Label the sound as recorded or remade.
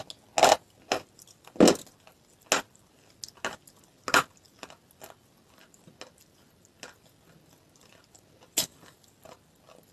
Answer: recorded